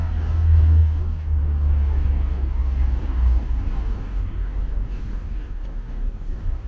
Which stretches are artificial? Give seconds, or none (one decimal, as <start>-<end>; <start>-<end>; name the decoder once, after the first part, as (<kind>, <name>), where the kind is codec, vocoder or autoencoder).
0.0-6.7 (codec, DAC)